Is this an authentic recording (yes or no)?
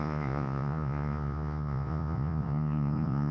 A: no